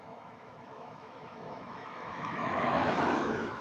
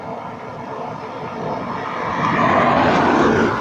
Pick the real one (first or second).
second